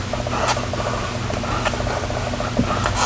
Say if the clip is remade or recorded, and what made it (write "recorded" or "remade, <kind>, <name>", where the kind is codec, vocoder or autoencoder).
recorded